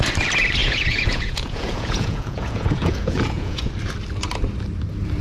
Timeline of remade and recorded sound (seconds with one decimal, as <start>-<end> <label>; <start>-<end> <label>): 0.0-0.6 recorded; 0.6-3.7 remade; 3.7-5.2 recorded